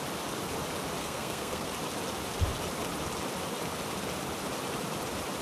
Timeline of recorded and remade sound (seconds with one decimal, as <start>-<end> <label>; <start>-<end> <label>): 0.0-1.0 recorded; 1.0-1.7 remade; 1.7-5.4 recorded